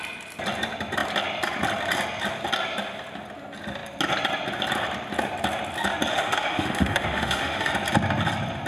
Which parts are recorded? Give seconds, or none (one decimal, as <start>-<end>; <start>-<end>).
0.0-6.1; 7.7-8.7